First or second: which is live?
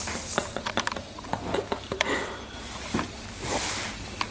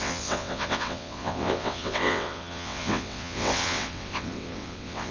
first